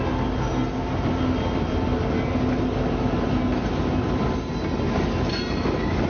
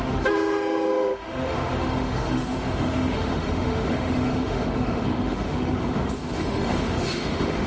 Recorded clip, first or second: first